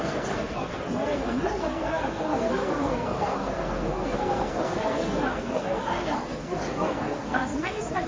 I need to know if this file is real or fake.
fake